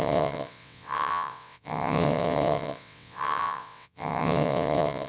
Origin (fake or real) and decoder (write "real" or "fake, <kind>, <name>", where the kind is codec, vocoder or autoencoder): fake, vocoder, WaveNeXt